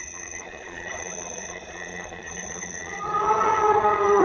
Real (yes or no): no